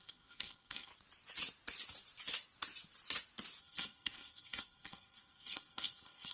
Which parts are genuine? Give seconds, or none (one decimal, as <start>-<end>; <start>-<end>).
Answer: 0.9-3.6